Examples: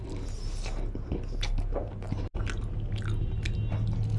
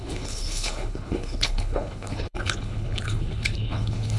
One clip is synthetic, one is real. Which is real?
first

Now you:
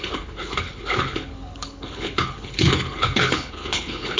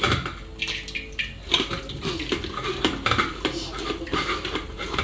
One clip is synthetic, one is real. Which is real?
second